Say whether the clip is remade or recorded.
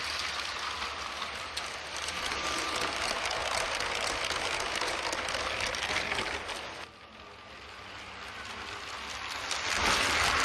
recorded